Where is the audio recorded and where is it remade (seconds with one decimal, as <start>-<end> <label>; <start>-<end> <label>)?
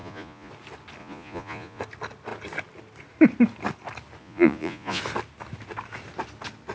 0.0-0.5 remade; 0.5-1.0 recorded; 1.0-1.8 remade; 1.8-4.2 recorded; 4.2-5.0 remade; 5.0-6.7 recorded